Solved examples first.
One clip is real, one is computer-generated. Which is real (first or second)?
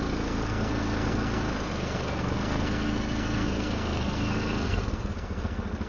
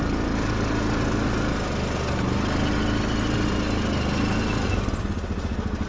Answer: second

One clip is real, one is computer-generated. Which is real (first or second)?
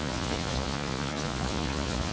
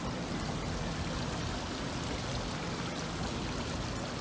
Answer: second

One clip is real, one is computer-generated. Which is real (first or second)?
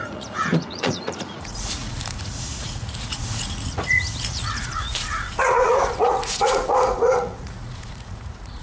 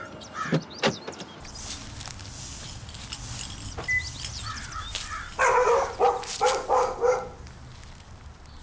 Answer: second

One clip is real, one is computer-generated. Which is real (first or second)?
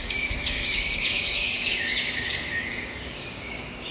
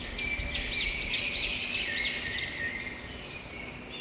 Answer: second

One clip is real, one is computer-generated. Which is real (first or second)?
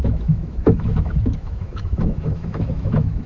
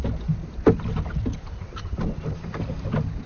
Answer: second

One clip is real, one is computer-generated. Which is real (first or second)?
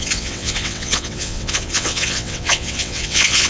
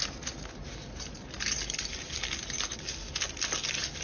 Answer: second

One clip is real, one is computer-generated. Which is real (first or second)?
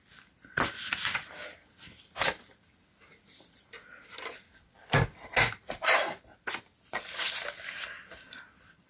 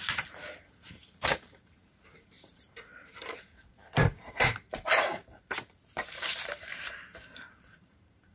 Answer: first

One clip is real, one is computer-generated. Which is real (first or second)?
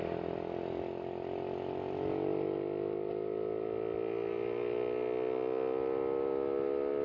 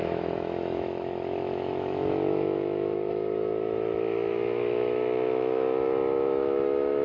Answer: first